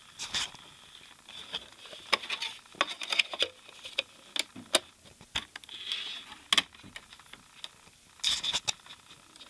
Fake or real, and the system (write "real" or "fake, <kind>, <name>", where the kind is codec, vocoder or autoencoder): real